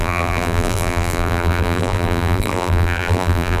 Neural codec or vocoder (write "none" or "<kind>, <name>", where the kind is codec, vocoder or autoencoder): vocoder, BigVGAN v2